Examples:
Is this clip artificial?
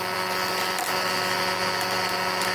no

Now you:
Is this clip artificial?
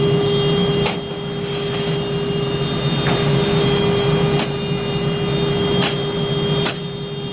no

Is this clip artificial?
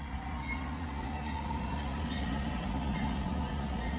yes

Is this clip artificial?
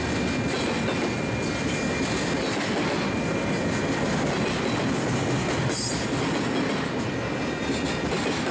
no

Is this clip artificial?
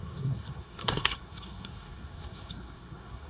yes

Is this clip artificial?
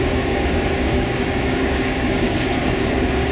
yes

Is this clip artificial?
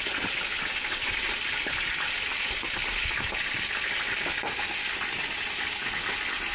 no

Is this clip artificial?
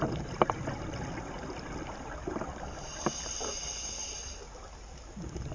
no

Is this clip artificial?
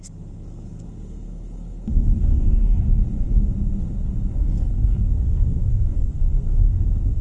yes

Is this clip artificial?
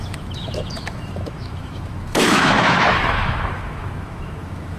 yes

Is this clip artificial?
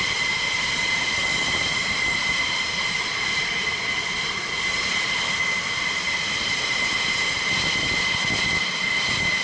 no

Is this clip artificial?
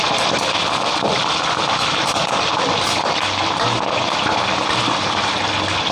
no